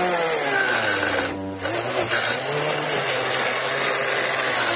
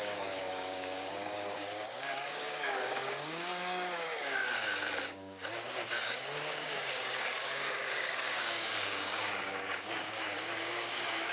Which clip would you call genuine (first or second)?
first